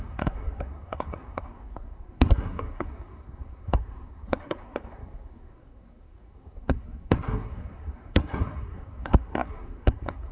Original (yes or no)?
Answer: no